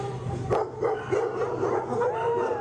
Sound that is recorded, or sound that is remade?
recorded